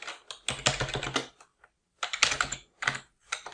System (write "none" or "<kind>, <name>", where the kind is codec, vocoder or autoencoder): none